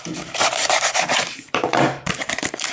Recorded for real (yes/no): no